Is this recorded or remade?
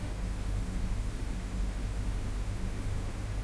remade